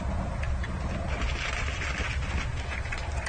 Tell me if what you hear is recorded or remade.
recorded